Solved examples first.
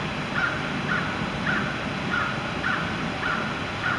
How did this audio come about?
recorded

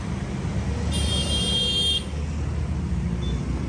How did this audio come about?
recorded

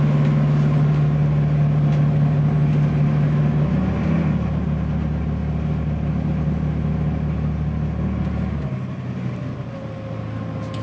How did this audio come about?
recorded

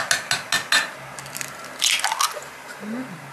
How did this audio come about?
recorded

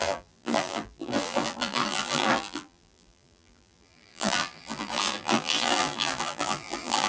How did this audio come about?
remade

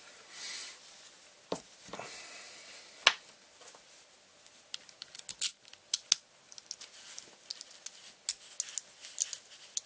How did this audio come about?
recorded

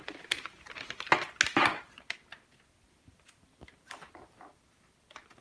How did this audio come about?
recorded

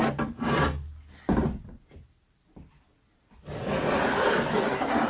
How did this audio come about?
recorded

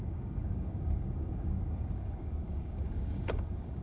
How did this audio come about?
remade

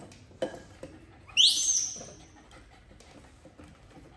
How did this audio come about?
recorded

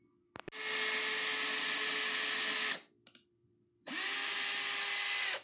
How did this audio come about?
recorded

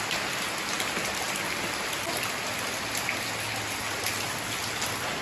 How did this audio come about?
recorded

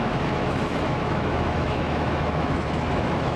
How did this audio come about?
remade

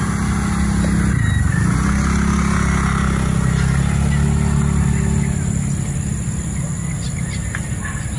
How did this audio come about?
recorded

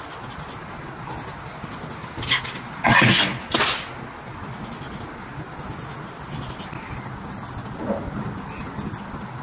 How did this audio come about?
recorded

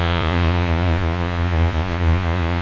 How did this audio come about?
remade